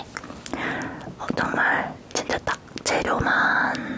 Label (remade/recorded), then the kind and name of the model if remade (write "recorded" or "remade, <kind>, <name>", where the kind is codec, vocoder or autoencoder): recorded